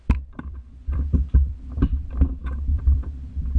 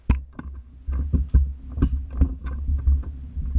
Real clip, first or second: second